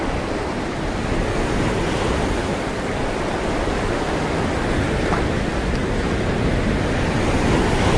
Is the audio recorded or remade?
recorded